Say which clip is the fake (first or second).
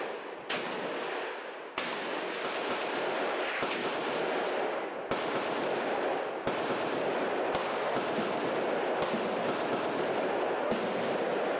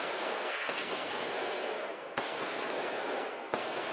second